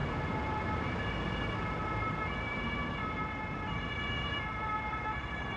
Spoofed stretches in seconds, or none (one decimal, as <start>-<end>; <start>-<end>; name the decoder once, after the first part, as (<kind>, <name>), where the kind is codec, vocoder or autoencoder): none